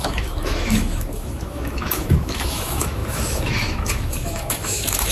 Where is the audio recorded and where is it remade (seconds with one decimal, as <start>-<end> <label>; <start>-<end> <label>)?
0.0-5.1 remade